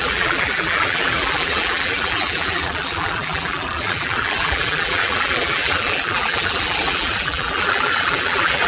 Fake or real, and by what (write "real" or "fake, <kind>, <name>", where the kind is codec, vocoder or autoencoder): fake, vocoder, BigVGAN v2